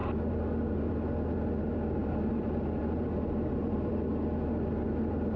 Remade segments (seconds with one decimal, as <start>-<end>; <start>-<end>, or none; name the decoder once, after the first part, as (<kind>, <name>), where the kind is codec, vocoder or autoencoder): 2.0-3.9 (vocoder, BigVGAN v2)